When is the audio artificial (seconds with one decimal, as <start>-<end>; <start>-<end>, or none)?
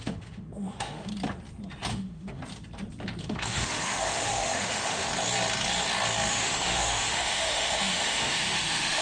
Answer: 0.0-1.1; 1.9-2.4; 3.2-5.1; 6.3-9.0